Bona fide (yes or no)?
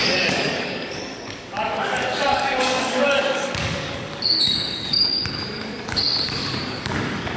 no